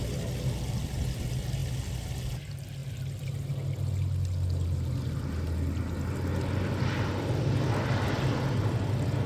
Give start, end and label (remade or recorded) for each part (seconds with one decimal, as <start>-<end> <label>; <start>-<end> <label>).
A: 0.0-9.3 recorded